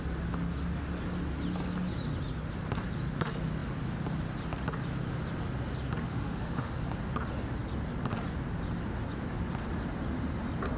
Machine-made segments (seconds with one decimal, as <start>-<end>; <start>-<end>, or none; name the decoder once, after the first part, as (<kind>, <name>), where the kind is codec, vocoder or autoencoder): 6.1-6.8 (autoencoder, DAC-VAE)